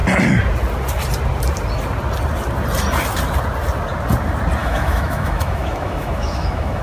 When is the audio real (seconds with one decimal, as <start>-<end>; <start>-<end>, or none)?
0.0-4.6